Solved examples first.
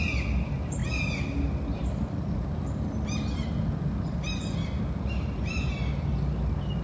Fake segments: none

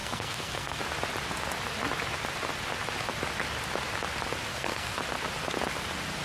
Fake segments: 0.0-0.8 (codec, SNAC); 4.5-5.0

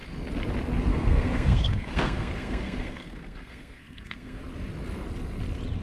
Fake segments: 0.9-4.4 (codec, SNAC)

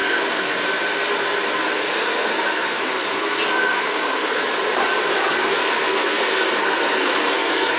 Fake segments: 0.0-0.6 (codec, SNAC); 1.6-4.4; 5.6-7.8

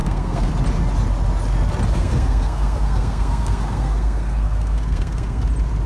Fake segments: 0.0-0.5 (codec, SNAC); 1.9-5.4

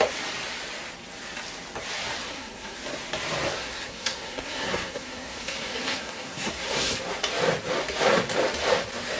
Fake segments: 2.2-2.8 (codec, SNAC); 3.6-6.9

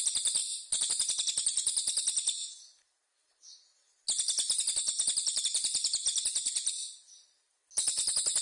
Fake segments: none

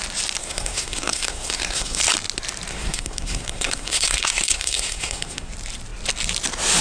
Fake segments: 0.4-2.0 (codec, SNAC); 2.7-5.5